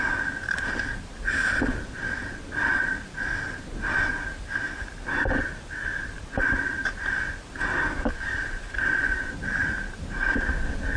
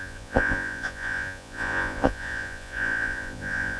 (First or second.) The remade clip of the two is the second